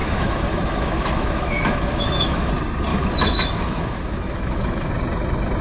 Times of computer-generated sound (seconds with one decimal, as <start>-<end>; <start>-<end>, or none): 0.0-2.5; 2.9-4.9